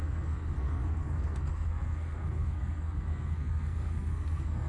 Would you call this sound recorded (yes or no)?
no